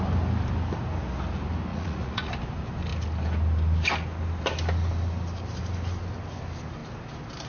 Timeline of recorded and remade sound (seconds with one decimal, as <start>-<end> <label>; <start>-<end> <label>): 0.0-1.7 recorded; 1.7-2.3 remade; 2.3-7.5 recorded